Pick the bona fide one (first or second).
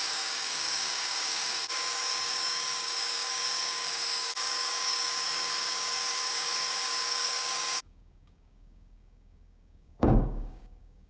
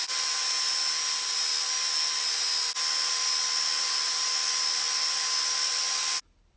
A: second